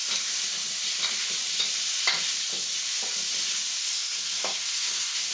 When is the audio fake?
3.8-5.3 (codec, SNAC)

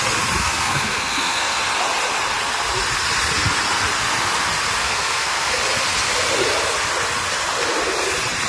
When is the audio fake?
0.4-1.6 (codec, SNAC); 4.8-5.5

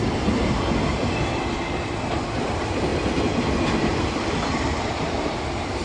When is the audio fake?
2.9-5.2 (vocoder, BigVGAN v2)

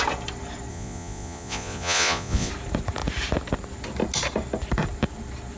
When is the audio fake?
0.7-2.5 (vocoder, Vocos)

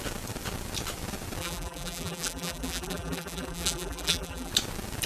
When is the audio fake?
1.4-4.5 (vocoder, BigVGAN v2)

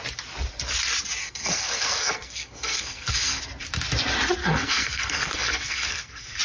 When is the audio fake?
1.2-3.4 (codec, SNAC); 4.4-6.4

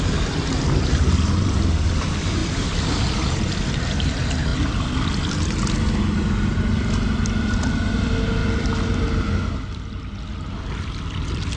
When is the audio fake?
none

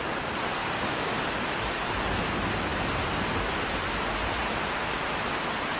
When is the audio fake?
0.6-1.1 (codec, DAC)